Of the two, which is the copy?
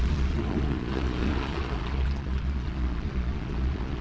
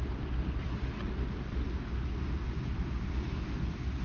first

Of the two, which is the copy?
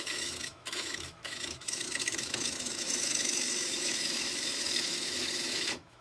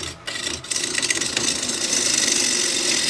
first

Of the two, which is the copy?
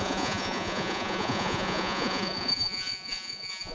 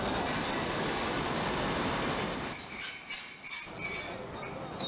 first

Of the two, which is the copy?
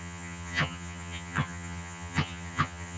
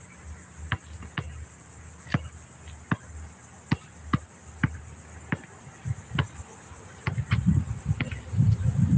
first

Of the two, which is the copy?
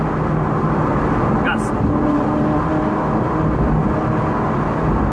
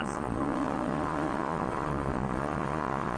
second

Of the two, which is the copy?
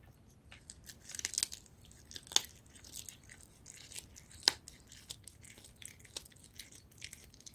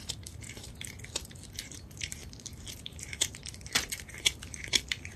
second